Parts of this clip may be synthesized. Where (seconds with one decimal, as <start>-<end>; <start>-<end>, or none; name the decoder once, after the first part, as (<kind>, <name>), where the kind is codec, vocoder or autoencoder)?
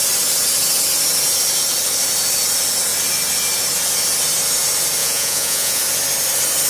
5.0-5.8 (vocoder, Vocos)